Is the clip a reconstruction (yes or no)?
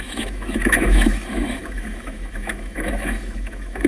yes